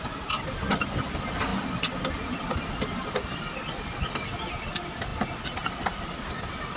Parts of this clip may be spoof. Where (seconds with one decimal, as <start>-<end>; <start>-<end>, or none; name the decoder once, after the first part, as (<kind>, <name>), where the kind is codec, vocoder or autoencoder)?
none